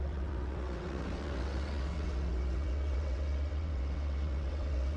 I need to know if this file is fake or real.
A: fake